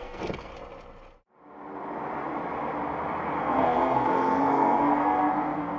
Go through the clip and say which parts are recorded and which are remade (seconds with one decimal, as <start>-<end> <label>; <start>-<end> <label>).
0.0-0.5 remade; 0.5-3.4 recorded; 3.4-5.8 remade